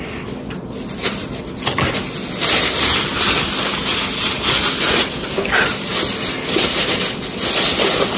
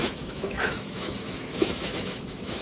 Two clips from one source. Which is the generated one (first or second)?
second